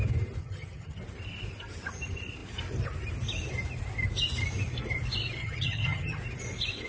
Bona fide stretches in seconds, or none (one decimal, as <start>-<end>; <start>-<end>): 0.0-0.4; 1.0-5.4; 6.2-6.9